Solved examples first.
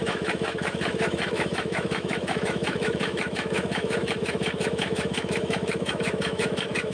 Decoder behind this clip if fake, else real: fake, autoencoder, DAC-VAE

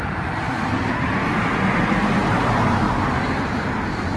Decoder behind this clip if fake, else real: real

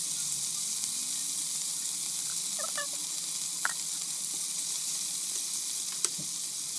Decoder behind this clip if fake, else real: real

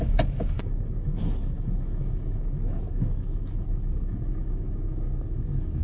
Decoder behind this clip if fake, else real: fake, autoencoder, DAC-VAE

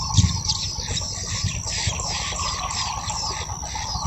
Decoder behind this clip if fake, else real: real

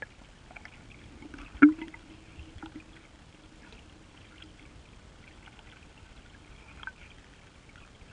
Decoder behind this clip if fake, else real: real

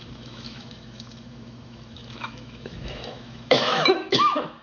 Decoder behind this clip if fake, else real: fake, autoencoder, DAC-VAE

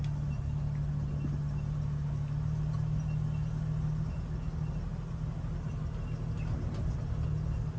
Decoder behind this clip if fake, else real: real